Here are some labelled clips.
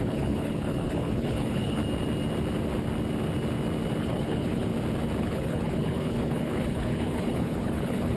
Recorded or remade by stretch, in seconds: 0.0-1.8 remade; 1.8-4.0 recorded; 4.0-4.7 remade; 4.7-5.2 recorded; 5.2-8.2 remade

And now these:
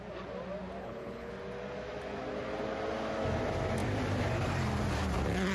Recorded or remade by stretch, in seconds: 0.0-0.8 recorded; 0.8-1.3 remade; 1.3-5.5 recorded

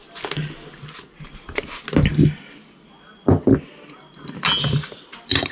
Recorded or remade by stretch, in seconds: 0.0-5.5 recorded